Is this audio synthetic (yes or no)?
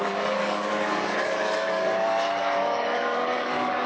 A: yes